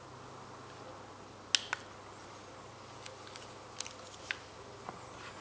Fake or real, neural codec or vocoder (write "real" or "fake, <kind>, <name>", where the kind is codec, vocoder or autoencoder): real